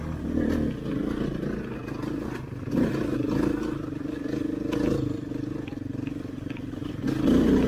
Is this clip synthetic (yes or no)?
no